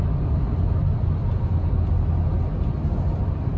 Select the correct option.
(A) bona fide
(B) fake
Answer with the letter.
A